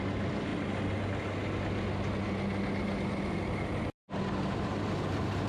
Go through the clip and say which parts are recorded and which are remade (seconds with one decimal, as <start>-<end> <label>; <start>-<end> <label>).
0.0-5.5 recorded